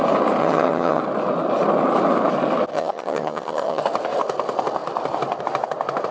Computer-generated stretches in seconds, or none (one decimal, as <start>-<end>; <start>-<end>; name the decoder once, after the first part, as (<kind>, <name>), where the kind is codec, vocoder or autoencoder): 0.4-1.0 (vocoder, HiFi-GAN); 2.7-3.8